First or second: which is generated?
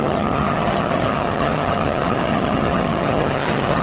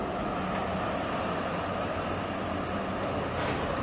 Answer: first